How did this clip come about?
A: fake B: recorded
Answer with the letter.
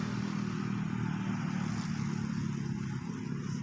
B